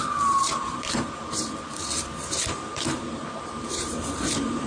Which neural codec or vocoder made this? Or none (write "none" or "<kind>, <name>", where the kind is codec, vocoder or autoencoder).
vocoder, BigVGAN v2